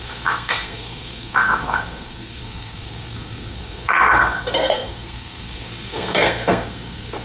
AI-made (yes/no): yes